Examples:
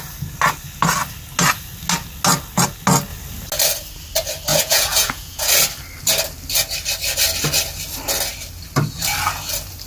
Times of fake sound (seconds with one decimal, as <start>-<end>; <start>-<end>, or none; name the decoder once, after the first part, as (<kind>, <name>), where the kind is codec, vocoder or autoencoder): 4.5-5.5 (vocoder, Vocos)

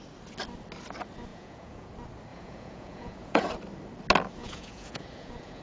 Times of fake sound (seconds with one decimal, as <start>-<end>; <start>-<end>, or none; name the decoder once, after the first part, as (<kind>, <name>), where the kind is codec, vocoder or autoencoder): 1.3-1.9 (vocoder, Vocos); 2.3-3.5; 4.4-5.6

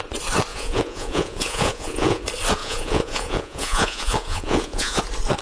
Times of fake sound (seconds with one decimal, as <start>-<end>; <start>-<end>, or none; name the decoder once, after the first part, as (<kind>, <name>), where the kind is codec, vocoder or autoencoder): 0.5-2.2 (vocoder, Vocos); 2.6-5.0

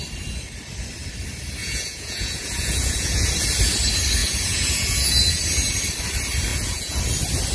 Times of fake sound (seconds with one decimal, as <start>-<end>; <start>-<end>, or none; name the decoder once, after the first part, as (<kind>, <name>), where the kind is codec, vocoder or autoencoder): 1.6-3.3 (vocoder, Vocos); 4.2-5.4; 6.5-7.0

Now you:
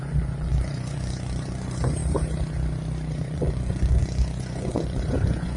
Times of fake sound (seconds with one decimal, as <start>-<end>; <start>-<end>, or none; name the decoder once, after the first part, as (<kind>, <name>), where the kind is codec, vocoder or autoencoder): 0.0-2.0 (vocoder, Vocos); 3.1-5.6

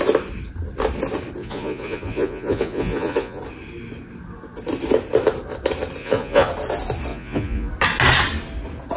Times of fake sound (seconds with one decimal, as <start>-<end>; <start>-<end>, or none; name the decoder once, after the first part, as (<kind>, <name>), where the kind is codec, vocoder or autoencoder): 1.4-3.4 (vocoder, Vocos); 6.0-6.5; 7.1-7.7

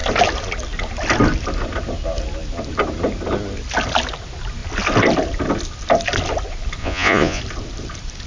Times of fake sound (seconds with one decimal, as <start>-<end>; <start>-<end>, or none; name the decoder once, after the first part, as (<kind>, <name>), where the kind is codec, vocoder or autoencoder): 6.8-7.4 (vocoder, Vocos)

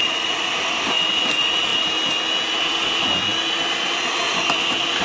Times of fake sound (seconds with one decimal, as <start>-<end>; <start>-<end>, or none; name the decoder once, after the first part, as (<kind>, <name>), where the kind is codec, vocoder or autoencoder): 0.0-0.5 (vocoder, Vocos)